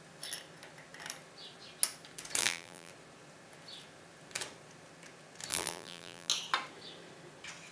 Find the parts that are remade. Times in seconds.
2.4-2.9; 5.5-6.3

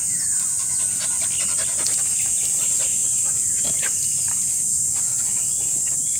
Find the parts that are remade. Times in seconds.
3.0-4.2

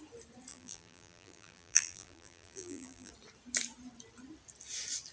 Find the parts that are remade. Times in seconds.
0.5-3.1

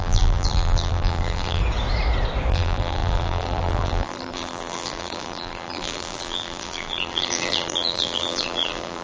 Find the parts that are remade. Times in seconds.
0.0-1.6; 2.5-9.0